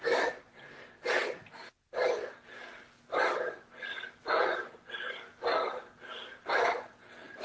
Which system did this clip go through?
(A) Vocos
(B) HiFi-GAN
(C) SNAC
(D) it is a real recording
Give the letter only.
D